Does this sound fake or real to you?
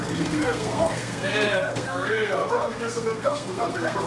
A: fake